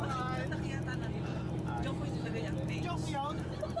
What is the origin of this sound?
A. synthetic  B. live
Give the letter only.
B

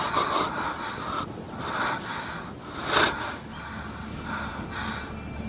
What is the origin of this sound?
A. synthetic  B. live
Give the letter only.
B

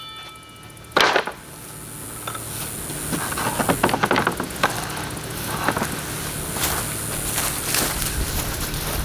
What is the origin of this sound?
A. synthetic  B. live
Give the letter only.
B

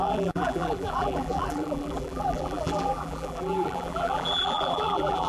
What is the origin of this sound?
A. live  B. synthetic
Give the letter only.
B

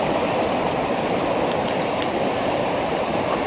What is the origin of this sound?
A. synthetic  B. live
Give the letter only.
A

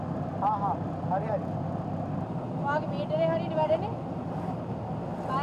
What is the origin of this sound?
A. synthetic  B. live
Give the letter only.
B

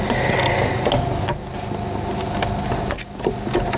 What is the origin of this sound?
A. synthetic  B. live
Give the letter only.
B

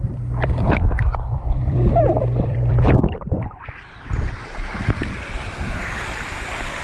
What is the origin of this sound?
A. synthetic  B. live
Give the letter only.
A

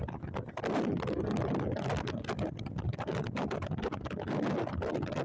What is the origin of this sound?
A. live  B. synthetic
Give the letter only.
A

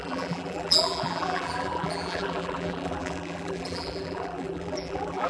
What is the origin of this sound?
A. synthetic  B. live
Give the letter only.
A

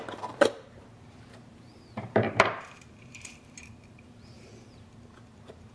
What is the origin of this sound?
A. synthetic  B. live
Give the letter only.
A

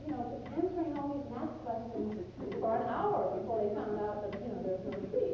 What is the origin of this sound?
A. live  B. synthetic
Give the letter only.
A